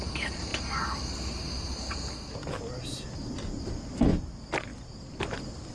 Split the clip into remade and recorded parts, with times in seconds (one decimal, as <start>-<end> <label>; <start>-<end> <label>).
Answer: 0.0-5.7 recorded